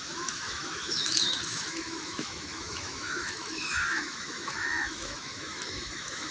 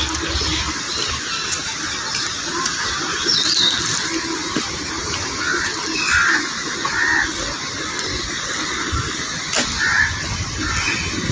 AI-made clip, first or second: first